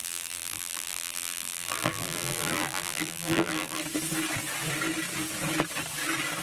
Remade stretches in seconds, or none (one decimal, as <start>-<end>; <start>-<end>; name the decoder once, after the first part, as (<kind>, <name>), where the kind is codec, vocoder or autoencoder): 0.0-3.8 (vocoder, BigVGAN v2)

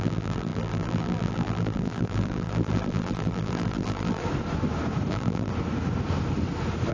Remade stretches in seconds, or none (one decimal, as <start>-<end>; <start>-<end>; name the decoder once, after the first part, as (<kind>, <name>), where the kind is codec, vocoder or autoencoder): 0.0-4.2 (vocoder, BigVGAN v2); 5.1-5.5

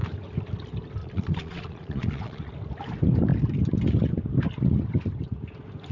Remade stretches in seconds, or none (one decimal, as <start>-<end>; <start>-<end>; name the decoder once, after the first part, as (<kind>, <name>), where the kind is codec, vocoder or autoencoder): 1.0-2.5 (vocoder, Vocos)